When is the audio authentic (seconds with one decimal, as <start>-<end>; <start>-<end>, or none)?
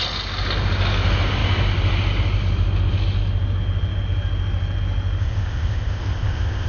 0.0-5.2